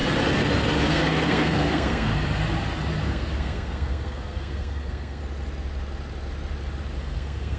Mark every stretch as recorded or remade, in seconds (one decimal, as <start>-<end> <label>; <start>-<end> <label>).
0.0-0.9 recorded; 0.9-2.1 remade; 2.1-3.0 recorded; 3.0-5.2 remade; 5.2-7.0 recorded; 7.0-7.6 remade